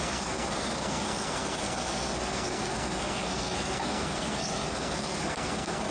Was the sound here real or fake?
fake